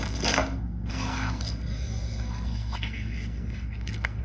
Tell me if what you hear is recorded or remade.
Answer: remade